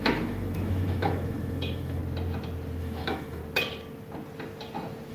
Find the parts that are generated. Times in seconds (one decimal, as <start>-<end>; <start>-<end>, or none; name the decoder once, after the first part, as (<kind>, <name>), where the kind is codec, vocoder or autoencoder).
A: 0.0-2.0 (autoencoder, DAC-VAE); 2.8-3.4